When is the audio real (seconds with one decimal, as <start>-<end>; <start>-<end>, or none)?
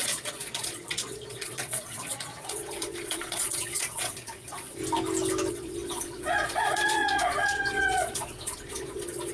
4.8-5.5